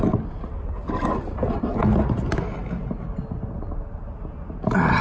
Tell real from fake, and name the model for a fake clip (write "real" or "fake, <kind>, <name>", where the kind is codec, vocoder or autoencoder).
real